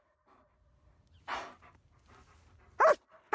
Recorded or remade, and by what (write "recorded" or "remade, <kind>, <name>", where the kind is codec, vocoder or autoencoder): recorded